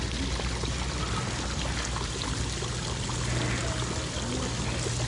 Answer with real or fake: real